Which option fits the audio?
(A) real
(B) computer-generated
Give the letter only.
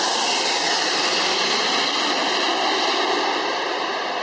A